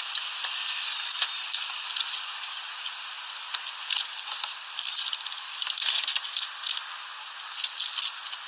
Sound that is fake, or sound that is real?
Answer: real